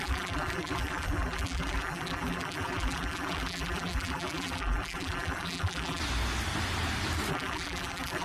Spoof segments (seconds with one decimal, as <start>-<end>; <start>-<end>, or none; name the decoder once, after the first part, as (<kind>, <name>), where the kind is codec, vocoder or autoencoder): 0.0-6.0 (vocoder, BigVGAN v2); 7.3-8.2